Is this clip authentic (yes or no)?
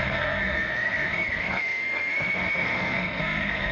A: no